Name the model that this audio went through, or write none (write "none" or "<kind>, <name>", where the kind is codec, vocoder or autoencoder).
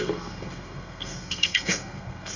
codec, SNAC